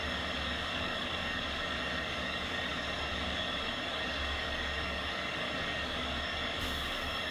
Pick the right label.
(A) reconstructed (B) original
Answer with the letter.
A